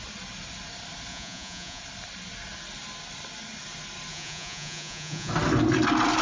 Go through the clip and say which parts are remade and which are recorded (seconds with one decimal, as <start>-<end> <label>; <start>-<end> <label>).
0.0-1.1 recorded; 1.1-1.8 remade; 1.8-4.1 recorded; 4.1-5.3 remade; 5.3-6.2 recorded